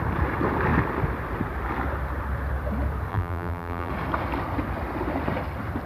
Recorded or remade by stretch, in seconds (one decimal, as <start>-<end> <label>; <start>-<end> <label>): 0.0-3.1 recorded; 3.1-3.9 remade; 3.9-5.9 recorded